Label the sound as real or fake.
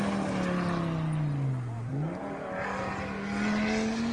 real